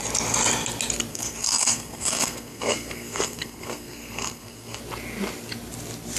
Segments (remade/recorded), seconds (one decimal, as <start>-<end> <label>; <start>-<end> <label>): 0.0-1.1 recorded; 1.1-4.8 remade; 4.8-6.2 recorded